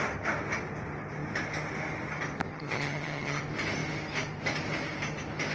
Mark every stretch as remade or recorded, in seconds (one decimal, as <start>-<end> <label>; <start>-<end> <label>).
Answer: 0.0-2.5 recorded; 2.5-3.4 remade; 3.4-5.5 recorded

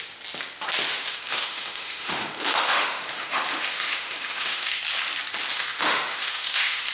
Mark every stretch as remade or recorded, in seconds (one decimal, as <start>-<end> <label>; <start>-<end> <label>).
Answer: 0.0-0.9 recorded; 0.9-4.8 remade; 4.8-5.5 recorded; 5.5-6.9 remade

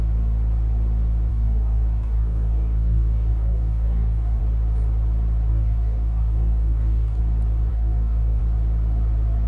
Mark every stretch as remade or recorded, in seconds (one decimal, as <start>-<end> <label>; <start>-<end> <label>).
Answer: 0.0-1.3 recorded; 1.3-4.4 remade; 4.4-5.5 recorded; 5.5-7.2 remade; 7.2-7.7 recorded; 7.7-8.4 remade; 8.4-9.5 recorded

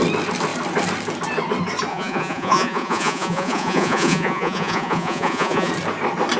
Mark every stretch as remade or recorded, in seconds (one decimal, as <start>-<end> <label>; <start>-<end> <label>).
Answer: 0.0-1.9 recorded; 1.9-5.7 remade; 5.7-6.4 recorded